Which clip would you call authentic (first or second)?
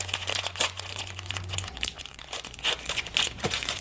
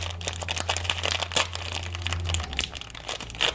second